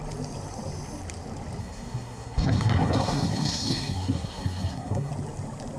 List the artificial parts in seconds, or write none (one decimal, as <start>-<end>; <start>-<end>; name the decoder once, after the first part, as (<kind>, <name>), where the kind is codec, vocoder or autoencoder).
1.6-5.1 (codec, SNAC)